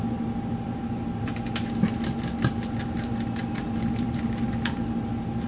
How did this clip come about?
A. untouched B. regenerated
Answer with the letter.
A